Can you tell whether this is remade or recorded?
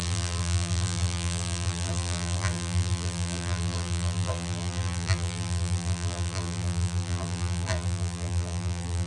remade